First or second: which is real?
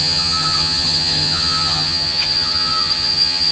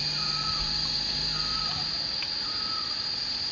second